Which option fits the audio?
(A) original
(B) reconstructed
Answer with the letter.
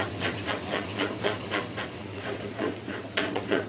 B